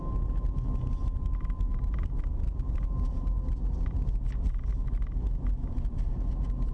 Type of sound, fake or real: real